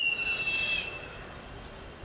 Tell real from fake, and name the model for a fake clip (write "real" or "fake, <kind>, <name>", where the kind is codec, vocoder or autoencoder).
real